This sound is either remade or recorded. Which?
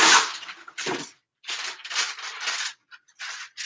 recorded